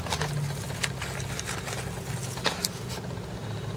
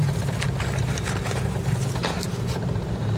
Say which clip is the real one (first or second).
first